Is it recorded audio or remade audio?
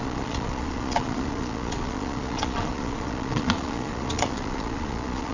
remade